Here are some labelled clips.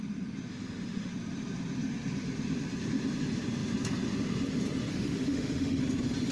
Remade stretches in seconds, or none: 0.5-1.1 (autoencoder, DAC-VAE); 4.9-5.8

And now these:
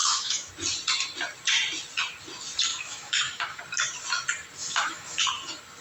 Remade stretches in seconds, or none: 0.0-0.5 (autoencoder, DAC-VAE); 2.7-3.6; 4.6-5.2